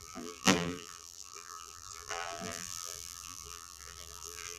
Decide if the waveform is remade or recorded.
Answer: remade